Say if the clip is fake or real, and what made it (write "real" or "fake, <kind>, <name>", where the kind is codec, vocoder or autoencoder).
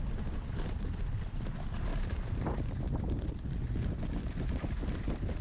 fake, vocoder, BigVGAN v2